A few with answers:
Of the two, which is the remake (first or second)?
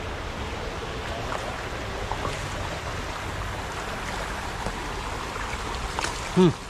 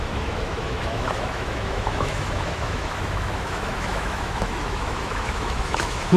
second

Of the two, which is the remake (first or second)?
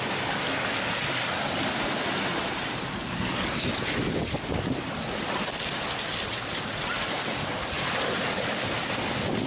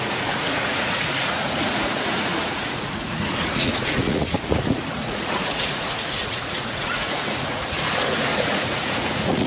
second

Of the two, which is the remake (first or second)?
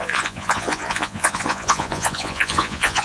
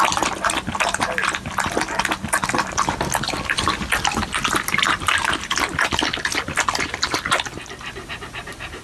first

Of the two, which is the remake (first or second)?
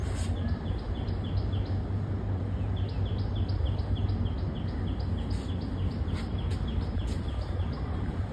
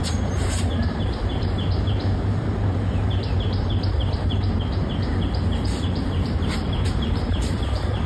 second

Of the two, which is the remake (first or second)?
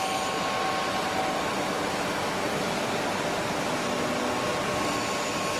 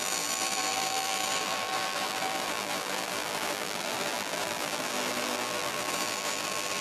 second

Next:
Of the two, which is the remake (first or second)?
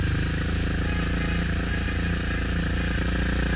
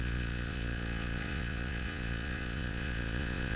second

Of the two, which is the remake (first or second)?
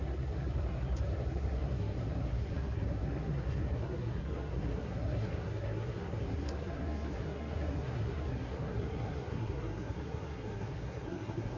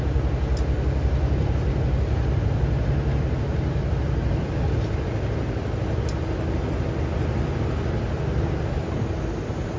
first